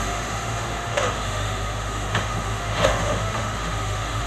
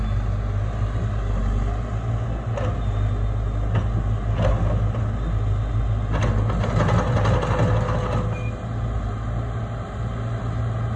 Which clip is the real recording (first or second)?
second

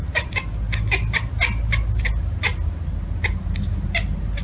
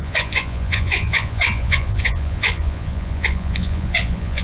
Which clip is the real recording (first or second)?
first